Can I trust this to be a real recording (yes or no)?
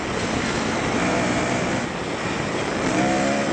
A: yes